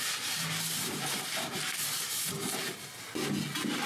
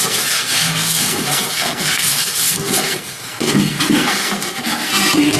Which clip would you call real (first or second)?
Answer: first